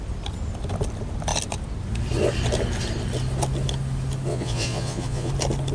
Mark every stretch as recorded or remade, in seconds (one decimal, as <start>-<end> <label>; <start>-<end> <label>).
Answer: 0.0-4.3 recorded; 4.3-5.3 remade; 5.3-5.7 recorded